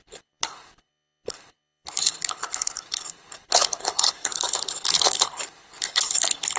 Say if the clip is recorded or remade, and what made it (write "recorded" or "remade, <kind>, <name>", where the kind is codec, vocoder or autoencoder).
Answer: remade, codec, HILCodec